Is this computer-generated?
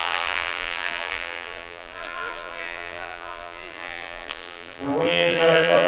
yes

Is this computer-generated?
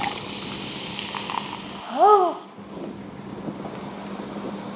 no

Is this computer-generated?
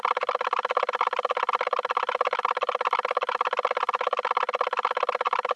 no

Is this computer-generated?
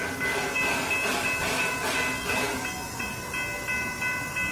no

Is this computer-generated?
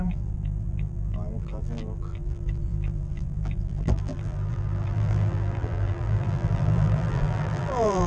yes